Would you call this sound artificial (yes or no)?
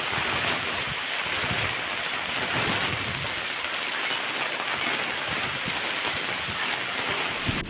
no